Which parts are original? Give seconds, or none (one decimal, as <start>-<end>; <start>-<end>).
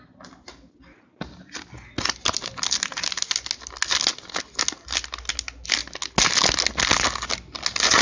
0.0-8.0